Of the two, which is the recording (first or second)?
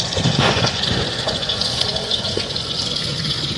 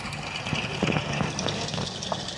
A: second